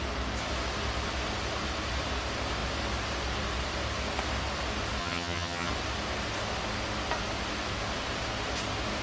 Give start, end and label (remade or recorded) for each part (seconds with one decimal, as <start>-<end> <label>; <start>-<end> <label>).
0.0-5.0 recorded; 5.0-5.7 remade; 5.7-9.0 recorded